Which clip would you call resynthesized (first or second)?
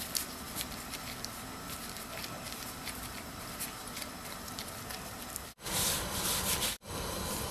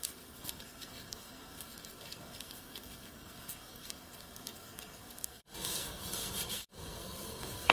second